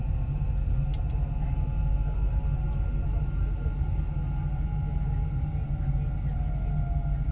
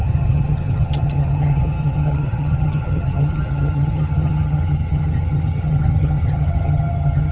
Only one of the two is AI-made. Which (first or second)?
second